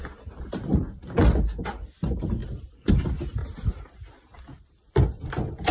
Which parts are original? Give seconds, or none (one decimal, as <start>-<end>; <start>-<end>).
0.0-2.4; 2.9-3.4; 4.7-5.7

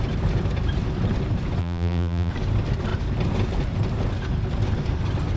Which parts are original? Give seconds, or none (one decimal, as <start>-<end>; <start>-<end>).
0.0-1.6; 2.3-5.4

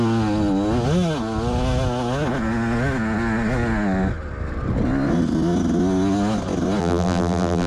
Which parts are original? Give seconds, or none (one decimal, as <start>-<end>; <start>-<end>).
0.0-6.8

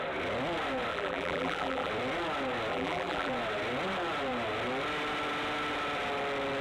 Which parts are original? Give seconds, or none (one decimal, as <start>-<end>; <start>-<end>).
0.0-0.9; 1.9-2.7; 3.3-6.6

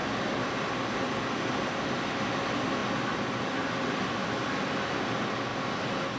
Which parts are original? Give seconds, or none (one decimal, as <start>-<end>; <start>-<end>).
0.0-6.2

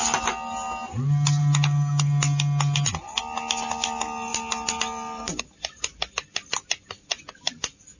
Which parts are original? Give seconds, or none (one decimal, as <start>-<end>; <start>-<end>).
0.0-8.0